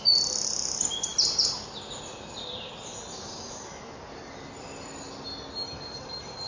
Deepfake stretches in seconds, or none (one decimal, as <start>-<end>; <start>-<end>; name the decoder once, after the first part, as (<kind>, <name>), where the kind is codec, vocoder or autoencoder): none